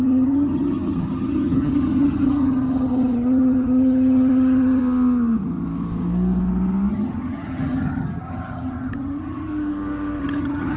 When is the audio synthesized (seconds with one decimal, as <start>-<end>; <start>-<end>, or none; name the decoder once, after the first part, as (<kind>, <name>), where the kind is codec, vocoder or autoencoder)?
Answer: 0.0-4.8 (vocoder, HiFi-GAN); 6.9-9.5; 10.2-10.8